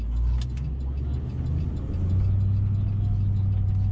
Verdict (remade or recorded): recorded